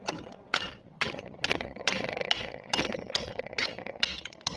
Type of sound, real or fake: fake